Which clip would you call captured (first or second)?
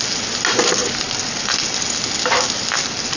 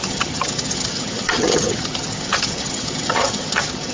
first